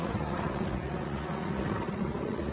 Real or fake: fake